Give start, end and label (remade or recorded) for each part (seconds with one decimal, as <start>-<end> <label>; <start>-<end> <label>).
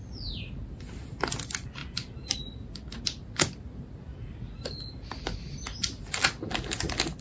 0.0-7.2 recorded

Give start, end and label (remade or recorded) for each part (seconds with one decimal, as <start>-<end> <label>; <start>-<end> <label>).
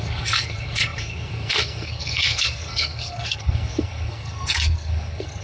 0.0-5.4 remade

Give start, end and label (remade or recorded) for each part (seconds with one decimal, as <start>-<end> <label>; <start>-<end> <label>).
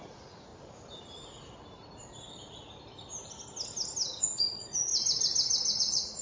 0.0-0.5 remade; 0.5-4.2 recorded; 4.2-4.9 remade; 4.9-5.8 recorded; 5.8-6.2 remade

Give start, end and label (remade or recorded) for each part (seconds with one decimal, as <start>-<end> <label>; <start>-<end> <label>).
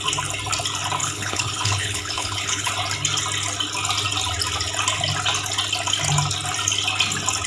0.0-1.0 recorded; 1.0-2.7 remade; 2.7-7.5 recorded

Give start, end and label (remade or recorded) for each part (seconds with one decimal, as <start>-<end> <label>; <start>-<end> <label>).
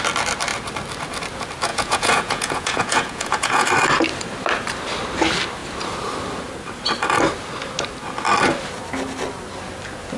0.0-1.7 recorded; 1.7-3.7 remade; 3.7-10.2 recorded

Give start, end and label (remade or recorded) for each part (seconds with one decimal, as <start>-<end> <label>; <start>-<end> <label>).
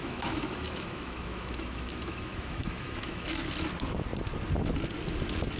0.0-3.4 remade; 3.4-5.6 recorded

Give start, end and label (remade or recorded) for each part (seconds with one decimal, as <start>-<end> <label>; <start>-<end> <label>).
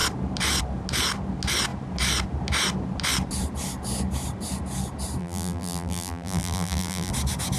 0.0-5.2 recorded; 5.2-7.1 remade; 7.1-7.6 recorded